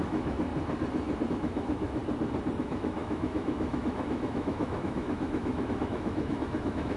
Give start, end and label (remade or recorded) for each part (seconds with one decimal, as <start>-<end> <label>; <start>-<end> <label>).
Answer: 0.0-0.5 remade; 0.5-1.3 recorded; 1.3-2.0 remade; 2.0-2.6 recorded; 2.6-7.0 remade